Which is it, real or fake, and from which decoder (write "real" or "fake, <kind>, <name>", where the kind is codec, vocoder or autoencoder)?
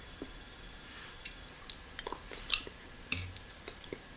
fake, vocoder, BigVGAN v2